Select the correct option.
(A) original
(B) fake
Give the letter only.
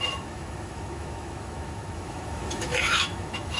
B